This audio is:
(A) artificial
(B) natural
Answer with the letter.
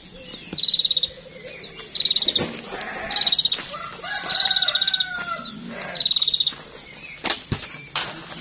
B